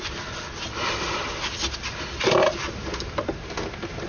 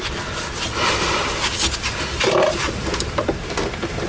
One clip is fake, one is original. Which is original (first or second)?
first